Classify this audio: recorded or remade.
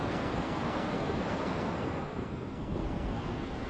remade